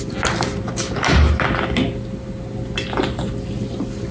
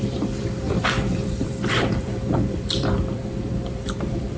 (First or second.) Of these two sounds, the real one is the first